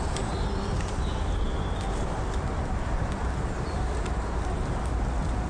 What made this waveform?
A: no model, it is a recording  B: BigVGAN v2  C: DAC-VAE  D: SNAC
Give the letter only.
A